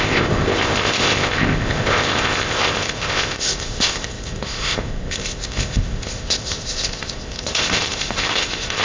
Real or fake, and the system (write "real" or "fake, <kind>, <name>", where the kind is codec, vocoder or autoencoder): fake, codec, ZipCodec